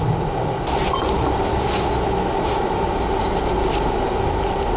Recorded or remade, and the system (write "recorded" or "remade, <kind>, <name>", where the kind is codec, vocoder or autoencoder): recorded